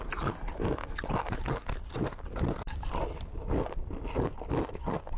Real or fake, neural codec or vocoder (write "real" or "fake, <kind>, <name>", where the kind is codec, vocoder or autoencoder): real